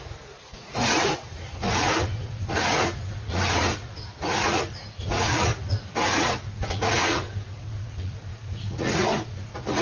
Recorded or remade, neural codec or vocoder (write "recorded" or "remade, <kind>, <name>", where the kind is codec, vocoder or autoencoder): remade, vocoder, Vocos